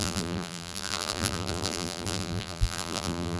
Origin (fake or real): fake